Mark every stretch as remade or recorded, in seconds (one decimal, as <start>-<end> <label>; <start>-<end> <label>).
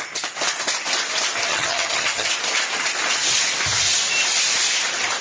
0.0-1.5 recorded; 1.5-2.3 remade; 2.3-5.2 recorded